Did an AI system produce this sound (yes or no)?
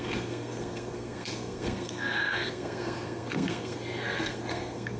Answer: yes